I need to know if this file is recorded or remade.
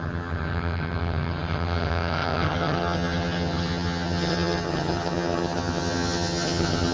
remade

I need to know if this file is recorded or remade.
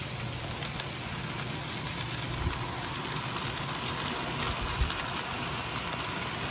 recorded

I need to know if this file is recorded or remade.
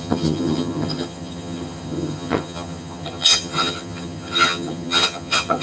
remade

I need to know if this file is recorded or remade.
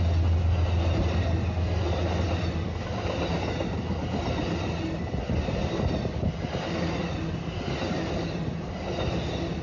recorded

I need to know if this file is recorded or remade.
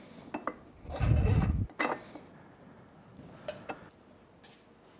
recorded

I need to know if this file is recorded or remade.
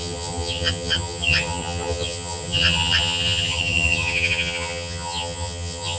remade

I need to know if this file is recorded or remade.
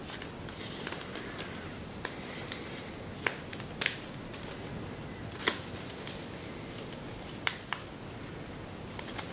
recorded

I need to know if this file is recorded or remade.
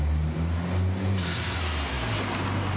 recorded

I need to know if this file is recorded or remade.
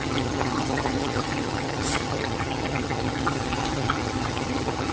remade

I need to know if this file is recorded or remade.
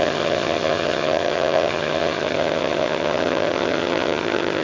remade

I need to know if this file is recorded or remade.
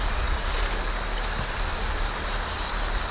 recorded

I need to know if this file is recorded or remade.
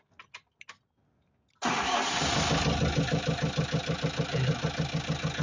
recorded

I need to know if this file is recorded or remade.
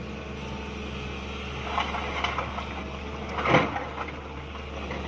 recorded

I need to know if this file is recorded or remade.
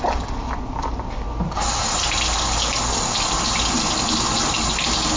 recorded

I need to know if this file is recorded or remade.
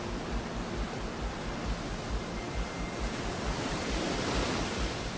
recorded